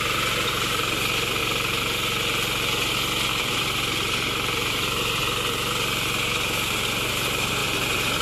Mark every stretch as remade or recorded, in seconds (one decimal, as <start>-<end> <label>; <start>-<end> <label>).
0.0-1.4 remade; 1.4-3.3 recorded; 3.3-5.2 remade; 5.2-7.1 recorded; 7.1-8.2 remade